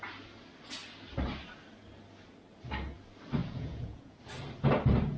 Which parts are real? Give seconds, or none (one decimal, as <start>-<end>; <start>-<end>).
0.0-3.4; 4.2-5.2